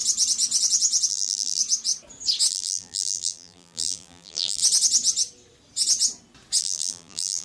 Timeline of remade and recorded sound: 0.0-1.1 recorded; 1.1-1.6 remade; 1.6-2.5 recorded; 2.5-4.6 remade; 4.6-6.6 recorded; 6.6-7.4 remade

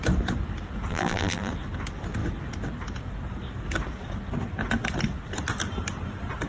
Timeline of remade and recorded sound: 0.0-0.9 recorded; 0.9-1.5 remade; 1.5-6.5 recorded

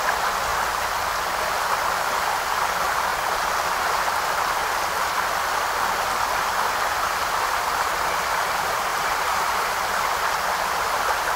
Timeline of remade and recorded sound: 0.0-8.9 recorded; 8.9-9.7 remade; 9.7-11.4 recorded